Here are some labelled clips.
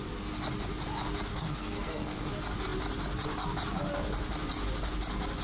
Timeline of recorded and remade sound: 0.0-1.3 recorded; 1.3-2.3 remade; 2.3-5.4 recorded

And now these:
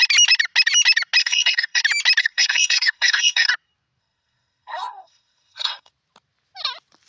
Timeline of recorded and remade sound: 0.0-1.2 recorded; 1.2-1.8 remade; 1.8-2.2 recorded; 2.2-3.5 remade; 3.5-4.0 recorded; 4.0-5.9 remade; 5.9-7.1 recorded

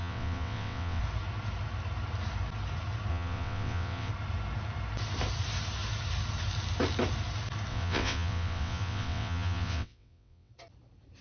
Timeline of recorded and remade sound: 0.0-1.0 remade; 1.0-3.1 recorded; 3.1-4.1 remade; 4.1-7.7 recorded; 7.7-10.5 remade; 10.5-11.2 recorded